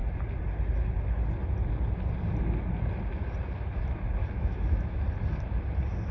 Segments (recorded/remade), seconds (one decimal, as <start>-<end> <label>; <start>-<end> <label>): 0.0-4.2 recorded; 4.2-5.0 remade; 5.0-6.1 recorded